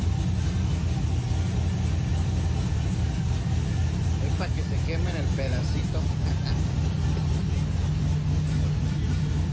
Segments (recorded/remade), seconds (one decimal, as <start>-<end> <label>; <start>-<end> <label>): 0.0-6.5 recorded; 6.5-7.4 remade; 7.4-9.5 recorded